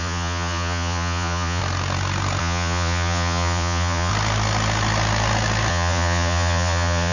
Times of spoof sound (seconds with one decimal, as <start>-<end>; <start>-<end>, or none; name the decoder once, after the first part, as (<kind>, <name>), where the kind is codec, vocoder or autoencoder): 0.0-1.6 (vocoder, Vocos); 2.4-4.1; 5.7-7.1

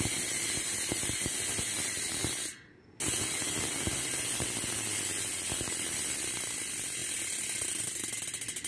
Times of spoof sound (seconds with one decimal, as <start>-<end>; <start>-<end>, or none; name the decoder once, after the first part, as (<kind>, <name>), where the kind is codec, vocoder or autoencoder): none

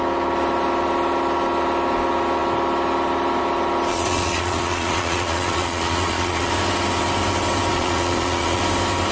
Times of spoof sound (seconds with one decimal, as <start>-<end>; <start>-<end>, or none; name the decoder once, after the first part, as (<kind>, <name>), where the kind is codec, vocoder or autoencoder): 3.9-6.5 (vocoder, Vocos); 7.7-8.6

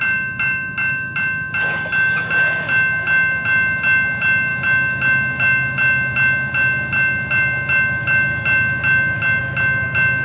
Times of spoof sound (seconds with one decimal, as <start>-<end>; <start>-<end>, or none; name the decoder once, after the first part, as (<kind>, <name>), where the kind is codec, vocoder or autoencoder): none

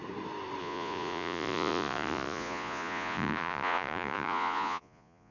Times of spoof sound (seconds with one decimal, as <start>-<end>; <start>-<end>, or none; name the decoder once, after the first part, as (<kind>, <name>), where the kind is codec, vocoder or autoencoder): 0.6-5.3 (vocoder, Vocos)